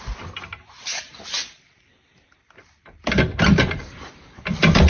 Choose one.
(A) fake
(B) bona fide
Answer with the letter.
B